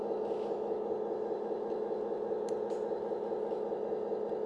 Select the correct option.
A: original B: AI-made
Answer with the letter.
A